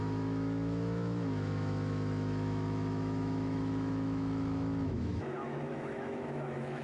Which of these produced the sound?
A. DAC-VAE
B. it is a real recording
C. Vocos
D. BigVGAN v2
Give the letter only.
A